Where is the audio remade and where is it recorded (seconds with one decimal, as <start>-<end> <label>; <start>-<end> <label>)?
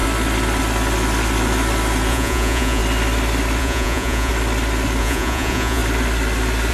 0.0-2.1 recorded; 2.1-2.8 remade; 2.8-3.6 recorded; 3.6-4.3 remade; 4.3-5.0 recorded; 5.0-5.8 remade; 5.8-6.7 recorded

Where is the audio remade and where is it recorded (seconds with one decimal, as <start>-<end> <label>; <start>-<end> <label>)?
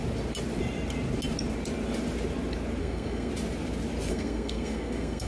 0.0-2.8 recorded; 2.8-3.3 remade; 3.3-4.1 recorded; 4.1-5.3 remade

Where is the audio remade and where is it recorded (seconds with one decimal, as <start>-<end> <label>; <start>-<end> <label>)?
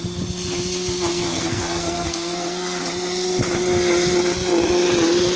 0.0-1.1 recorded; 1.1-2.8 remade; 2.8-5.4 recorded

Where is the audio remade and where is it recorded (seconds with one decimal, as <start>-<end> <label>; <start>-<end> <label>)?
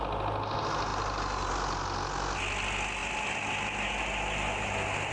0.0-5.1 recorded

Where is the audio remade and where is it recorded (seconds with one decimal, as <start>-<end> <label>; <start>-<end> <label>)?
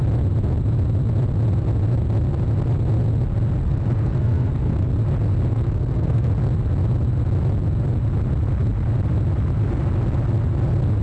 0.0-3.6 recorded; 3.6-4.9 remade; 4.9-5.5 recorded; 5.5-6.3 remade; 6.3-11.0 recorded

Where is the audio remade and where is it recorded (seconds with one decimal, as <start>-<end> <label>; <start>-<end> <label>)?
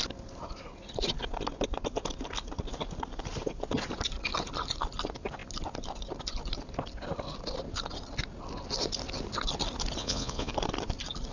0.0-10.0 recorded; 10.0-10.5 remade; 10.5-11.3 recorded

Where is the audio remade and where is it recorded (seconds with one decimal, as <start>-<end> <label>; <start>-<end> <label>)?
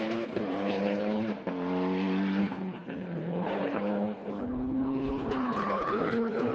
0.0-1.3 remade; 1.3-2.4 recorded; 2.4-6.5 remade